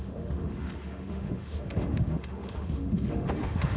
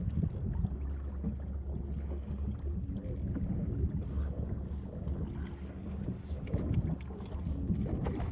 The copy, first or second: first